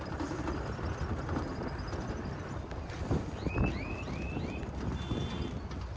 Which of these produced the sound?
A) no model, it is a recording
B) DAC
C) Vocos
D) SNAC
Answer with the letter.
A